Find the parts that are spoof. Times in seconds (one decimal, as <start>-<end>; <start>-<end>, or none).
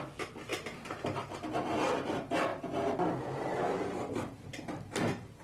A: none